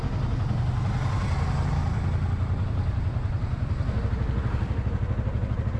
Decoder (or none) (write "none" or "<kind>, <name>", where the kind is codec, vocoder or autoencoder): none